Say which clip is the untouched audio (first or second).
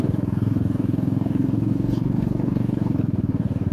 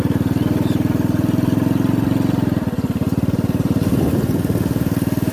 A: second